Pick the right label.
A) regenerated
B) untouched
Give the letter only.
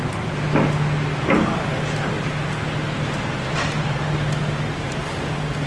B